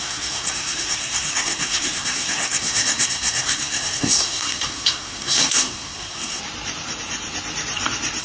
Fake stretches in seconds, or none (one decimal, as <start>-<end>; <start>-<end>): 0.0-6.4

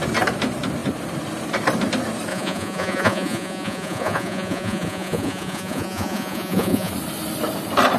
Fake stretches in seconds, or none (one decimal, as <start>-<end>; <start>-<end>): 2.3-6.9

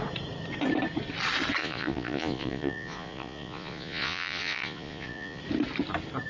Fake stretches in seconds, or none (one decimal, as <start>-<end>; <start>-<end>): 1.6-5.4